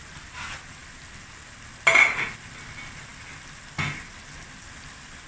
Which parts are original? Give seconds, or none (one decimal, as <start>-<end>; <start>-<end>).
0.0-5.3